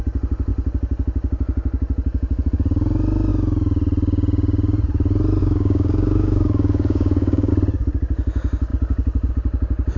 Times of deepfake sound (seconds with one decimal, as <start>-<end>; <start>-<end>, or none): 5.4-7.5